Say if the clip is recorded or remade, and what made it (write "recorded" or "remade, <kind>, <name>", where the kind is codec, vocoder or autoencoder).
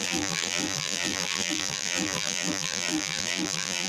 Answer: remade, vocoder, BigVGAN v2